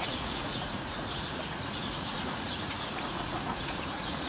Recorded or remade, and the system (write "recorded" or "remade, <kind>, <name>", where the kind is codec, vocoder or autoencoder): remade, vocoder, Vocos